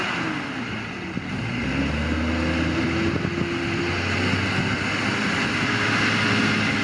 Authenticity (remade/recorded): recorded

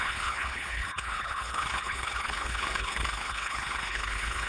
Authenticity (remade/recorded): remade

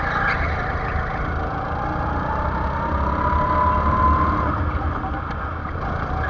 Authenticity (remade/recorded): recorded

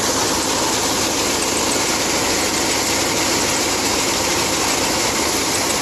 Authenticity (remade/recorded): recorded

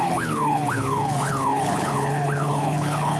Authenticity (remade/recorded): remade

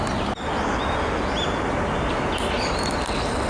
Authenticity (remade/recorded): recorded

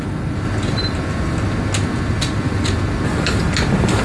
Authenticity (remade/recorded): recorded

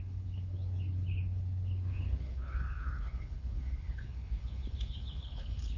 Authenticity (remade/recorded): remade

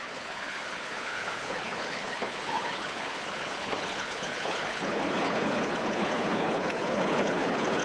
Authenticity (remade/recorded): remade